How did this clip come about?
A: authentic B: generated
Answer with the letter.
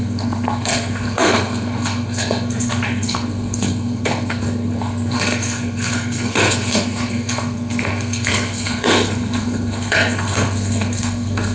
B